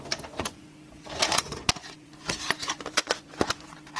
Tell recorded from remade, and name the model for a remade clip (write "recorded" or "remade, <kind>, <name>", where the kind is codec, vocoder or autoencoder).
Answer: remade, vocoder, Vocos